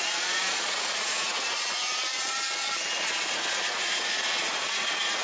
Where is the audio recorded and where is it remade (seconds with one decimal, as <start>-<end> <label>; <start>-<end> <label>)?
0.0-5.2 remade